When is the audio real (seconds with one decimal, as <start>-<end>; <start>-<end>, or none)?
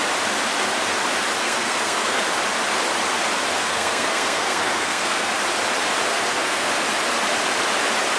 0.0-1.4; 2.2-3.6; 5.3-6.1; 6.7-8.2